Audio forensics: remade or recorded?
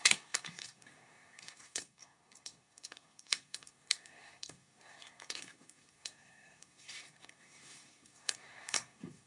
remade